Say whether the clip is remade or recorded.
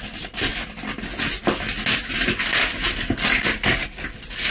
recorded